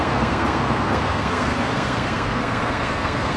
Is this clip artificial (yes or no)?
yes